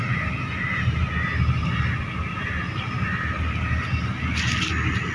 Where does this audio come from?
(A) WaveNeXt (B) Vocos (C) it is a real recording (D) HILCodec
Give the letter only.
C